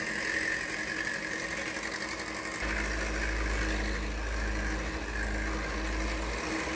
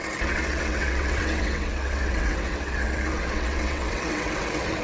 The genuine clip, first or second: first